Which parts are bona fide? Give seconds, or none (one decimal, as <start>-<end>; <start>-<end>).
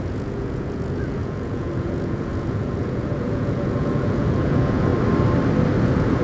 4.9-5.8